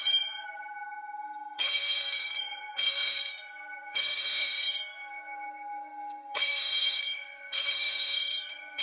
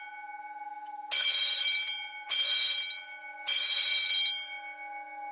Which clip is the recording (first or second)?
second